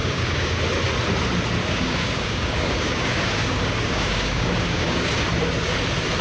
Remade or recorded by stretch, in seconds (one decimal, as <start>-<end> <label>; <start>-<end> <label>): 0.0-0.6 remade; 0.6-1.6 recorded; 1.6-5.1 remade; 5.1-6.2 recorded